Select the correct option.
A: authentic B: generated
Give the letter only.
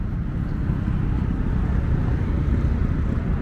A